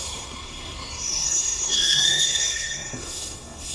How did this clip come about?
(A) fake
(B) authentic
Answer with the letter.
A